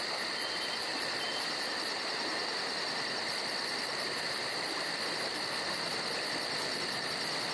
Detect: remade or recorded recorded